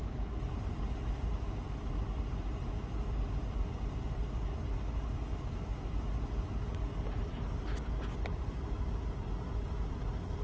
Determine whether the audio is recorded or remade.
recorded